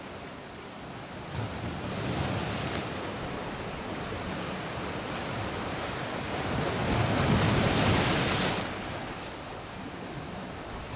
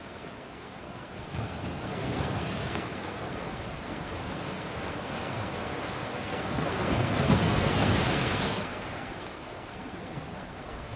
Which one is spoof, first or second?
second